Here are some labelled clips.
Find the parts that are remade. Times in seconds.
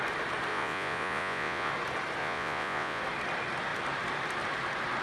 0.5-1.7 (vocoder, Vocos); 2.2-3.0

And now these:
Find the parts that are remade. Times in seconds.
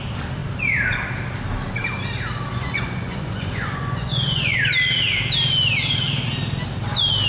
2.5-4.6 (vocoder, Vocos)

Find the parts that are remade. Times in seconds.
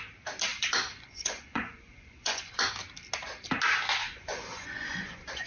0.5-2.7 (vocoder, Vocos); 4.0-5.5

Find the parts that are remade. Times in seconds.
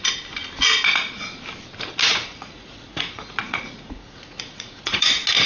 2.1-5.1 (vocoder, Vocos)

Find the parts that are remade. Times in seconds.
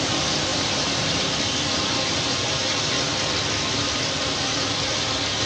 none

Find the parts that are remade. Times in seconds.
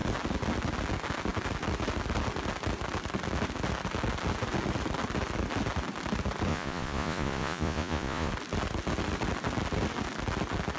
6.5-8.3 (vocoder, Vocos)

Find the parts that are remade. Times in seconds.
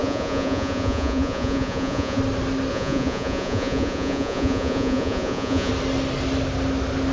0.0-2.2 (vocoder, Vocos); 2.7-5.7